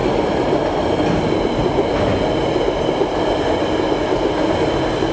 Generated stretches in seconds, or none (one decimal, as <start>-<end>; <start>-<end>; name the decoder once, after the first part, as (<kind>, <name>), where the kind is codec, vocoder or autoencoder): none